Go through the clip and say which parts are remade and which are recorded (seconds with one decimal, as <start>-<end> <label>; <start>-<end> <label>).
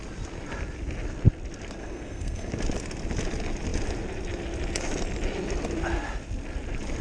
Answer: 0.0-1.8 recorded; 1.8-2.5 remade; 2.5-7.0 recorded